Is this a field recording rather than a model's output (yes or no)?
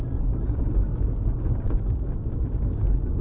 yes